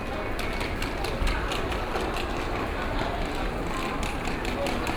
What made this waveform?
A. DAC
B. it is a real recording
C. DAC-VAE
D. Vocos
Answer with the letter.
B